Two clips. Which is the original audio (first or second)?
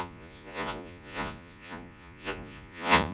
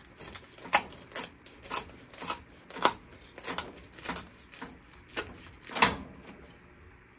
second